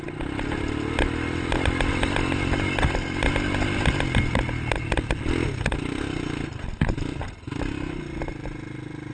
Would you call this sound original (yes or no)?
yes